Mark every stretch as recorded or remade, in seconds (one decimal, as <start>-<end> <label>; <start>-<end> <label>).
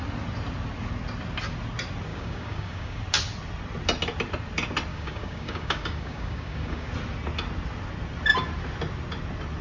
0.0-2.1 recorded; 2.1-3.0 remade; 3.0-4.9 recorded; 4.9-6.9 remade; 6.9-9.6 recorded